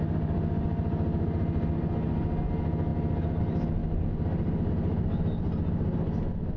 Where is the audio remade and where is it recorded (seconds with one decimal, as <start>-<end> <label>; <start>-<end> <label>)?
0.0-6.6 recorded